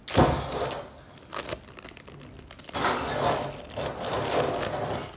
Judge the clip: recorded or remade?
recorded